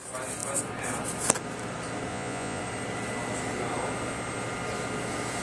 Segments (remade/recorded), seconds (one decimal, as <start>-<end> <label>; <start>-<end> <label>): 0.0-2.1 recorded; 2.1-2.6 remade; 2.6-5.4 recorded